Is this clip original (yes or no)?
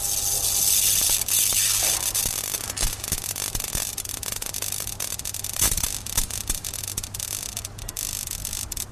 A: yes